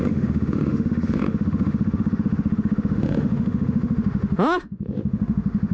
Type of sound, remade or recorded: remade